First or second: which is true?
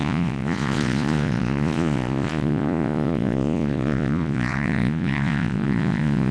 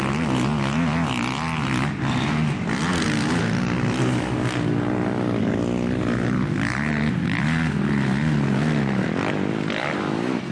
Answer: second